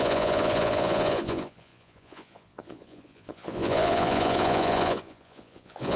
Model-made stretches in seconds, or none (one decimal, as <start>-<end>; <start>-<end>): 0.0-6.0